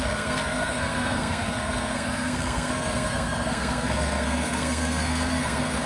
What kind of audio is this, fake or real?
fake